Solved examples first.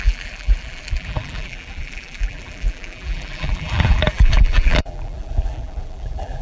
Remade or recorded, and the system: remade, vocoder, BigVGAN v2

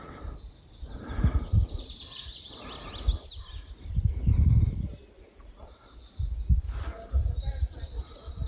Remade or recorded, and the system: remade, vocoder, BigVGAN v2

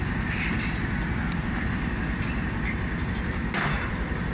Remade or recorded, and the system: recorded